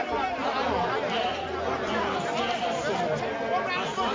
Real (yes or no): yes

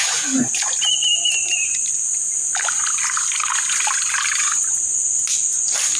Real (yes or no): yes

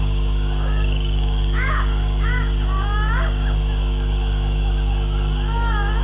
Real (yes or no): no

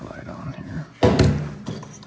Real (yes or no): yes